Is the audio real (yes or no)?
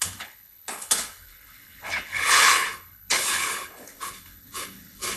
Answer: no